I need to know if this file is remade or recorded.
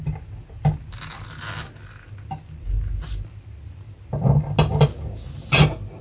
recorded